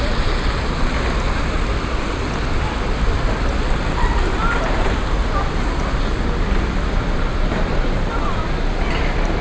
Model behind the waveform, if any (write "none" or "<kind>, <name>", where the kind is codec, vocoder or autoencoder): none